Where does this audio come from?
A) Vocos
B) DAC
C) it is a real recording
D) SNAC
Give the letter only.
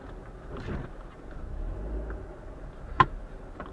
C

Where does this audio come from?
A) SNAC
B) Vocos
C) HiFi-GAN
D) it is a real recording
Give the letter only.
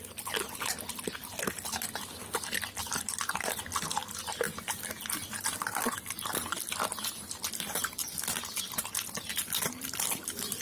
D